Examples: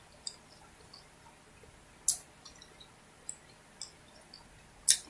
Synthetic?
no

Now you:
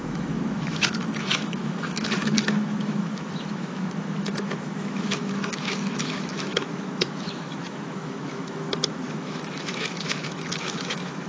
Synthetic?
yes